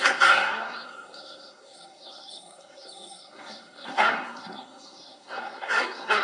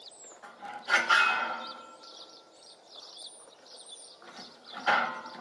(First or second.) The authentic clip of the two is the second